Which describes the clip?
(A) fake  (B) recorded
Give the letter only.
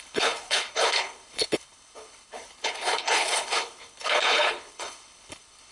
A